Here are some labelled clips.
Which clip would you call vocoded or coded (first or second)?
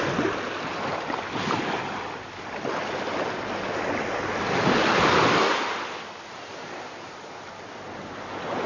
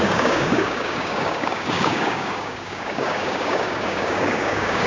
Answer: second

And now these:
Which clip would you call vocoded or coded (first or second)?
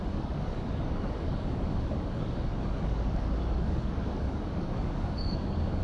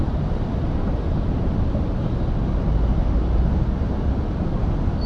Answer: first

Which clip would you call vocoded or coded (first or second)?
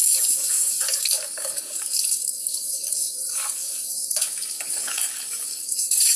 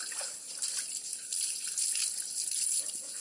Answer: first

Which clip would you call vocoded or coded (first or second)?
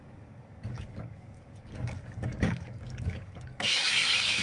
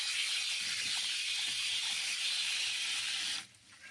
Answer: first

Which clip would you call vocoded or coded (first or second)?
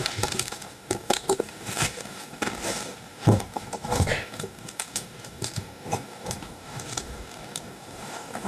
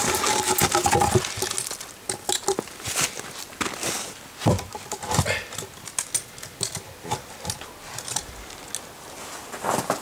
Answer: first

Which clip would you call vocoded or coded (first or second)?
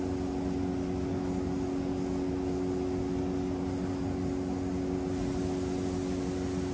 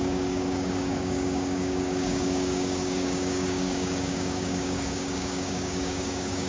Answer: second